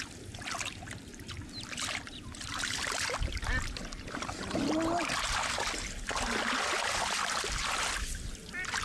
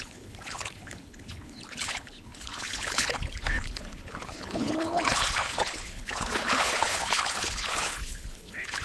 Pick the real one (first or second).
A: first